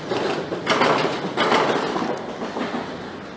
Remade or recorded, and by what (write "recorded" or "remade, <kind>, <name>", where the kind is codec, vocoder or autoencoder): recorded